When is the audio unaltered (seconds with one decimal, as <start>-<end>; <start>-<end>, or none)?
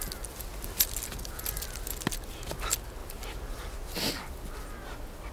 0.0-5.3